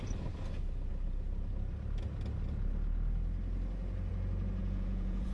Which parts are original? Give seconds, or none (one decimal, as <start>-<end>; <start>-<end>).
0.0-4.6